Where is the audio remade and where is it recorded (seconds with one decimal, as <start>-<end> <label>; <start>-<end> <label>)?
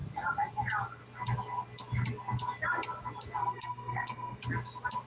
0.0-3.4 recorded; 3.4-4.4 remade; 4.4-5.1 recorded